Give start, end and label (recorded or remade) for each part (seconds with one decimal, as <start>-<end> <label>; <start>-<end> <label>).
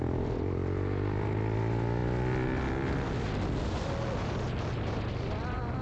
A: 0.0-5.8 recorded